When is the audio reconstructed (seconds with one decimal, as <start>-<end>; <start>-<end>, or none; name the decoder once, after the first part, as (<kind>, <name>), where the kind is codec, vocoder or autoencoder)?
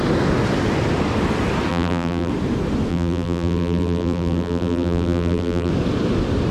1.7-2.3 (vocoder, BigVGAN v2); 2.9-5.7